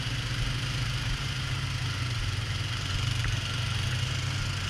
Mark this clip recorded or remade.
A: recorded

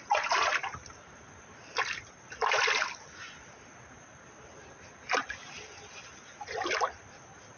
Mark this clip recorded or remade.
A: recorded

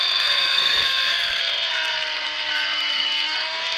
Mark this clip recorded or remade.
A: remade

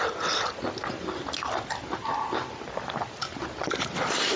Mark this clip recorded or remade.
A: recorded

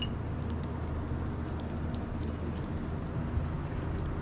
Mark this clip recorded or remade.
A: recorded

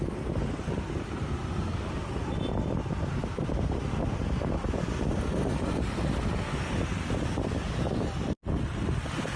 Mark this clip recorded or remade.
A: recorded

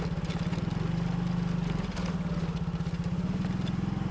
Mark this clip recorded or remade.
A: recorded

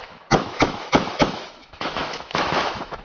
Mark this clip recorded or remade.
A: remade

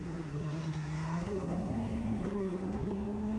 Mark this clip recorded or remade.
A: remade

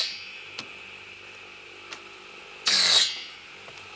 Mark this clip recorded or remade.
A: recorded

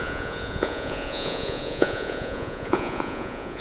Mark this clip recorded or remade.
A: remade